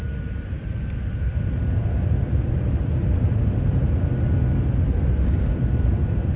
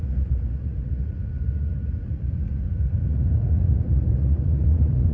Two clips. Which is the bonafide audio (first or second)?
first